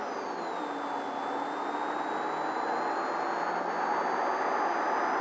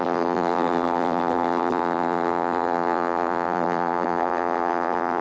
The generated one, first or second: second